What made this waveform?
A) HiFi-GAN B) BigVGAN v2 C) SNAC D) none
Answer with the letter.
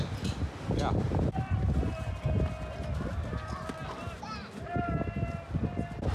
D